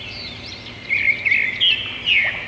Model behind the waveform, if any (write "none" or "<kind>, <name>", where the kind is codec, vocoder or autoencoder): none